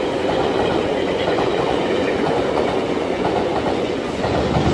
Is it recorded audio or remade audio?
remade